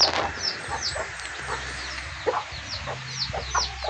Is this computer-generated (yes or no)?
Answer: no